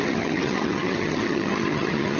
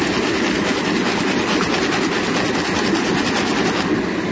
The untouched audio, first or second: second